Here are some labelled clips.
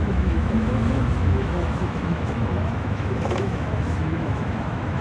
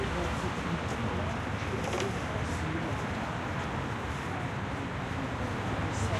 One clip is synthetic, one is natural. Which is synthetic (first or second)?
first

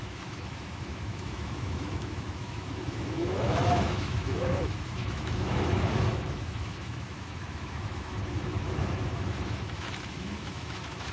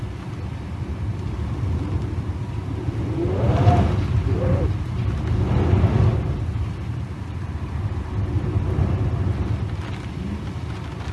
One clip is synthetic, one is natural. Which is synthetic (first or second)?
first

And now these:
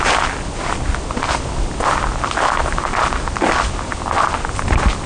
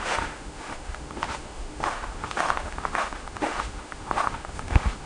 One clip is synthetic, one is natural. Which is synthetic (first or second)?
second